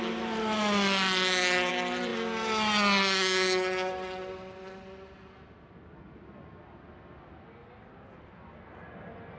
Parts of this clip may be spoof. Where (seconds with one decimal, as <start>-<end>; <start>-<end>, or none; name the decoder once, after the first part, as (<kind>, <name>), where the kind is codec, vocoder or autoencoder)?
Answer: none